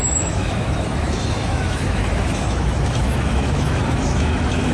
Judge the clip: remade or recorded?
remade